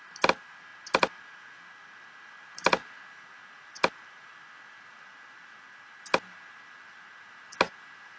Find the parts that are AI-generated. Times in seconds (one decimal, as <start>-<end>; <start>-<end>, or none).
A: none